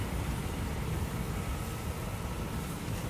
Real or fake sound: real